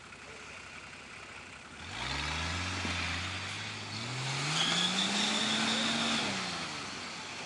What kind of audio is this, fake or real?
real